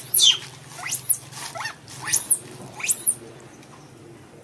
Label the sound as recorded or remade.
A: recorded